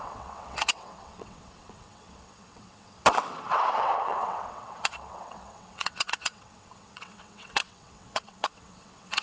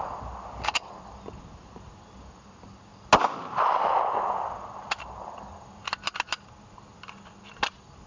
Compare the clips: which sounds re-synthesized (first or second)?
first